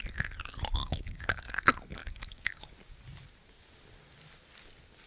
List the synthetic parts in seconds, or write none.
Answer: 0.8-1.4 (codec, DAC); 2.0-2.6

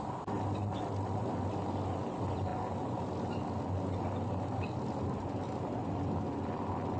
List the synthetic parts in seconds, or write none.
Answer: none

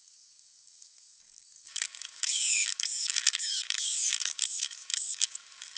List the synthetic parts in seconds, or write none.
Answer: 0.0-5.8 (codec, DAC)

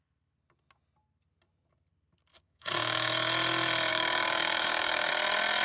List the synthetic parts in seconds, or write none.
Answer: 2.3-3.1 (codec, DAC); 3.9-5.1

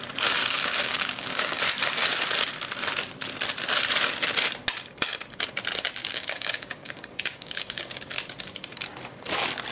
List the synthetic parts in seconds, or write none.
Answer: 0.4-1.6 (codec, DAC); 6.0-8.0